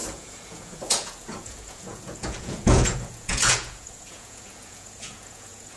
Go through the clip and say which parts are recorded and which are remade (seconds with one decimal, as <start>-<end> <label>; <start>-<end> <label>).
0.0-5.8 remade